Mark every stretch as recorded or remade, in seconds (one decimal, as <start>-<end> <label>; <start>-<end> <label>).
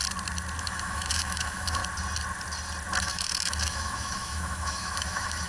0.0-0.6 recorded; 0.6-1.8 remade; 1.8-3.0 recorded; 3.0-5.5 remade